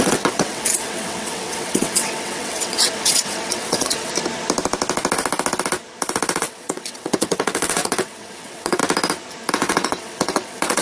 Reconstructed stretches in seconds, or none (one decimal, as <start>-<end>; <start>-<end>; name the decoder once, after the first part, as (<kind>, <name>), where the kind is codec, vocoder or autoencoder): 0.0-4.1 (vocoder, WaveNeXt); 6.4-8.8; 9.5-10.8